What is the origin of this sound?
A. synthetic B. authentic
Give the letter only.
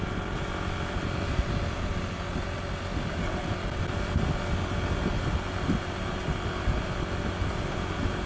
B